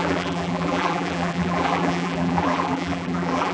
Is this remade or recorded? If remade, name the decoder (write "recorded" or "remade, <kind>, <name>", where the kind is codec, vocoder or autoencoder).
remade, vocoder, BigVGAN v2